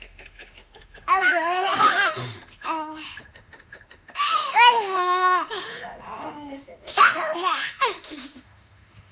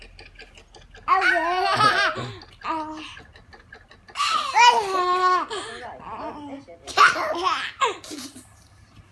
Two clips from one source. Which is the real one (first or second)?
second